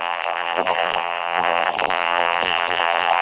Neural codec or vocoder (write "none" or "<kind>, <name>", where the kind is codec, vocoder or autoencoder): vocoder, BigVGAN v2